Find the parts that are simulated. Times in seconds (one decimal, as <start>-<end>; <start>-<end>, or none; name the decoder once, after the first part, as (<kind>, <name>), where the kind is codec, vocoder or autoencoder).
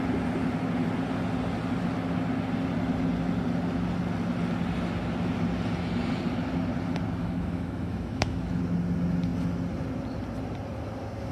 7.2-8.6 (autoencoder, DAC-VAE)